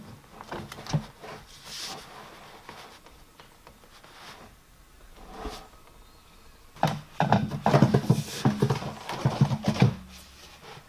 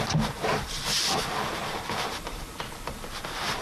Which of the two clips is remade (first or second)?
second